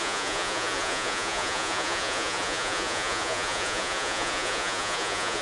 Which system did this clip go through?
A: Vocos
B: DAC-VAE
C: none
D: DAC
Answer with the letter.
A